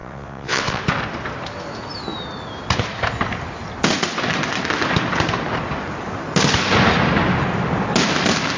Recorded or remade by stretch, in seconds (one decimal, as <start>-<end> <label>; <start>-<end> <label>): 0.0-0.8 remade; 0.8-8.6 recorded